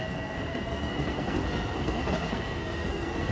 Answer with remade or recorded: remade